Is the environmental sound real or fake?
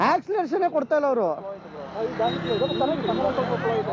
real